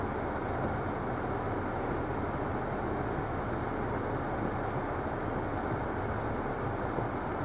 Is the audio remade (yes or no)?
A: no